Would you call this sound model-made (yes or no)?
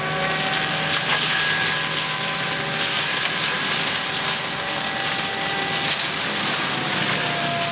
no